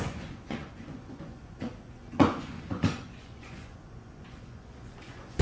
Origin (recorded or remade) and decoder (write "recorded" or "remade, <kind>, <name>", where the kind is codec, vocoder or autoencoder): remade, vocoder, Vocos